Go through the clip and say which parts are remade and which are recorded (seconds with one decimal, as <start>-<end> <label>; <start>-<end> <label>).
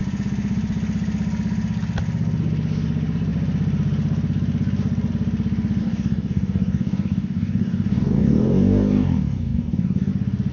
0.0-5.8 recorded; 5.8-10.1 remade; 10.1-10.5 recorded